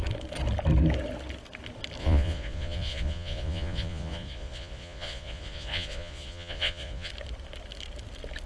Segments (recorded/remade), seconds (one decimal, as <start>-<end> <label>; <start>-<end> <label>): 0.0-2.0 recorded; 2.0-7.1 remade; 7.1-8.5 recorded